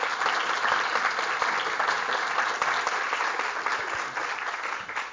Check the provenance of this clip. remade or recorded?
recorded